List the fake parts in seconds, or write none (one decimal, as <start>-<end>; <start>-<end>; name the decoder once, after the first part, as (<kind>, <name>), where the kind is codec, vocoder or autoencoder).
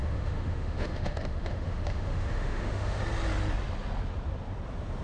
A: 0.0-3.0 (autoencoder, DAC-VAE)